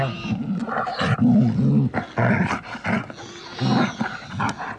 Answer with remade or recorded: recorded